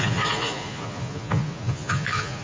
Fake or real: fake